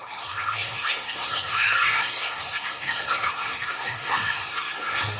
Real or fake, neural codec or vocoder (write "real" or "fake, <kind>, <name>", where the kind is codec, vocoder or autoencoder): fake, codec, SNAC